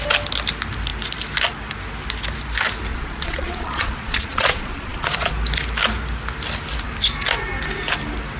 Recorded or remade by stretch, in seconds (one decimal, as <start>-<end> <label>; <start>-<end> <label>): 0.0-2.9 recorded; 2.9-5.3 remade; 5.3-8.4 recorded